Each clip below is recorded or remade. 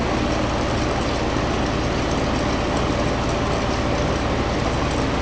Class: recorded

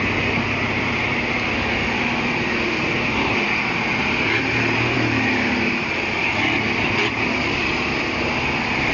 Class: recorded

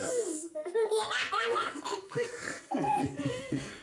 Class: remade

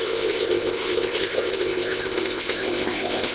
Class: remade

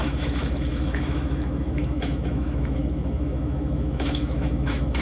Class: remade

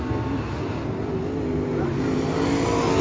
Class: recorded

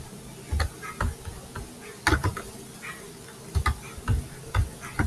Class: recorded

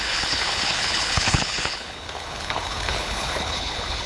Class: remade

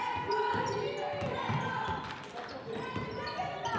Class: recorded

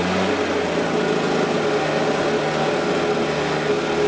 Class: recorded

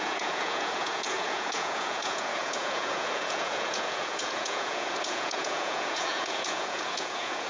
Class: remade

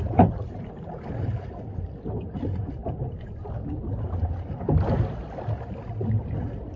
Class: recorded